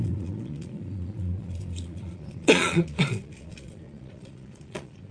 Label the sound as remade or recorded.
remade